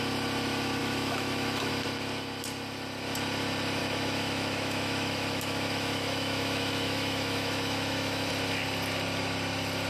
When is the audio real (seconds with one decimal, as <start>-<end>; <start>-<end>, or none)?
0.0-0.8; 1.7-3.8; 8.3-9.9